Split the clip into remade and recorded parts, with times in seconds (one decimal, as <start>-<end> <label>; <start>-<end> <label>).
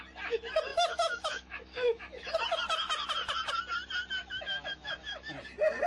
0.0-0.7 recorded; 0.7-2.3 remade; 2.3-4.2 recorded; 4.2-5.3 remade; 5.3-5.9 recorded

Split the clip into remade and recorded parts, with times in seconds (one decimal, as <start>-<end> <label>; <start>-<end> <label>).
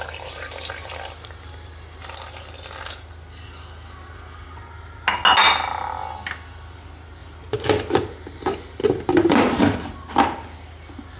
0.0-7.2 recorded; 7.2-7.7 remade; 7.7-8.8 recorded; 8.8-9.4 remade; 9.4-11.2 recorded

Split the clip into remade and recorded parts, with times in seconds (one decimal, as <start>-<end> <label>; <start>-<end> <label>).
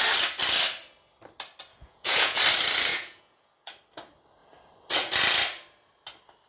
0.0-1.7 recorded; 1.7-2.4 remade; 2.4-2.9 recorded; 2.9-3.7 remade; 3.7-6.5 recorded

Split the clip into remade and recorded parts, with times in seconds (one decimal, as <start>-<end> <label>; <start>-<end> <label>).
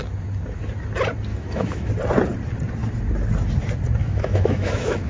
0.0-1.3 recorded; 1.3-1.9 remade; 1.9-4.0 recorded; 4.0-5.1 remade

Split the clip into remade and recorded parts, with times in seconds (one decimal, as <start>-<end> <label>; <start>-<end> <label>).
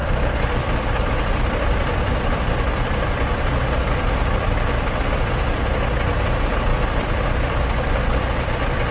0.0-1.0 remade; 1.0-1.8 recorded; 1.8-5.9 remade; 5.9-6.7 recorded; 6.7-8.5 remade; 8.5-8.9 recorded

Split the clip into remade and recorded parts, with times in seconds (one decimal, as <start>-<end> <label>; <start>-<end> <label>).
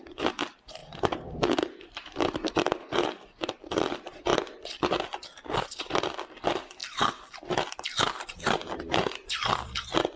0.0-4.3 remade; 4.3-5.8 recorded; 5.8-10.2 remade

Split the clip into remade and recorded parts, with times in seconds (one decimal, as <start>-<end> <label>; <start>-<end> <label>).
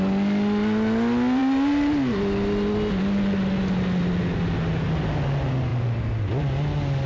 0.0-7.1 recorded